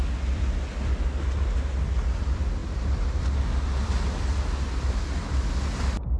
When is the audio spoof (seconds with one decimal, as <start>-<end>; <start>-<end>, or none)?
2.6-3.2